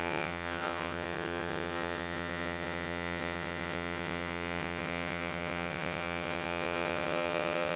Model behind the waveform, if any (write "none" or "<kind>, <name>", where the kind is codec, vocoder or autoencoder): vocoder, WaveNeXt